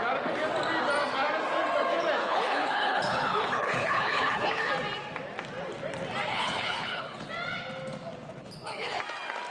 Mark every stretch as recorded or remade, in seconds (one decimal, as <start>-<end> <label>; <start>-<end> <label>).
0.0-2.2 recorded; 2.2-4.7 remade; 4.7-6.3 recorded; 6.3-7.3 remade; 7.3-8.4 recorded; 8.4-9.0 remade; 9.0-9.5 recorded